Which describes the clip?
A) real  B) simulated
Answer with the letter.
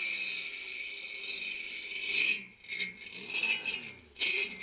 A